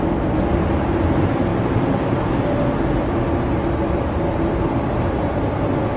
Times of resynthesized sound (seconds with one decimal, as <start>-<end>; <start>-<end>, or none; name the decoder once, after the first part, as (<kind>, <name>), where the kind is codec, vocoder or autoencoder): none